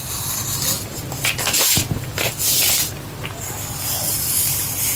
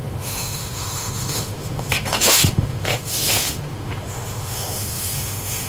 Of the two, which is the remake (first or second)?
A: second